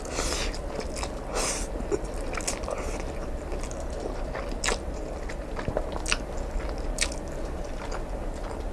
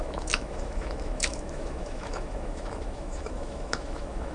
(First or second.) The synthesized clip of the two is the second